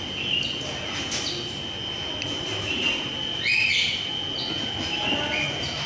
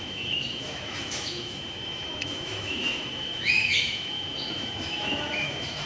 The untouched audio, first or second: first